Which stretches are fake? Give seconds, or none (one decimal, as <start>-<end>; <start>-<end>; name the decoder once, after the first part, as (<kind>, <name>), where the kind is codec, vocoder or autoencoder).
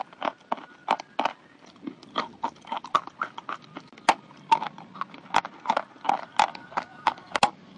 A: 6.5-7.8 (codec, DAC)